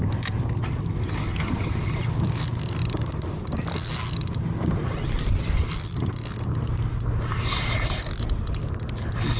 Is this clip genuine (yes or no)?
yes